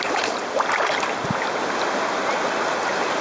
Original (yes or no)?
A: yes